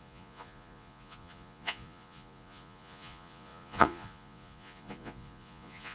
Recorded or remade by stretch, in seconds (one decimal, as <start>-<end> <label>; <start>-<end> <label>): 0.0-5.9 remade

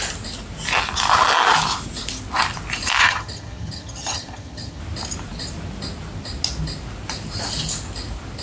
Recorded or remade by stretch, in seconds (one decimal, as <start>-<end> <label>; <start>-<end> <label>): 0.0-3.0 recorded; 3.0-4.8 remade; 4.8-8.4 recorded

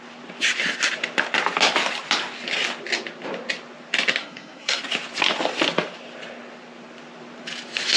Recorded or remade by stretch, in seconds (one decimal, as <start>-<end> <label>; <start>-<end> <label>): 0.0-4.2 recorded; 4.2-4.8 remade; 4.8-8.0 recorded